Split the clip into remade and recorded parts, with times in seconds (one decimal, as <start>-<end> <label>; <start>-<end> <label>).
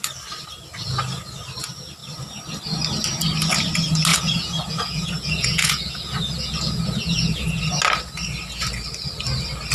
0.0-4.1 recorded; 4.1-7.6 remade; 7.6-9.7 recorded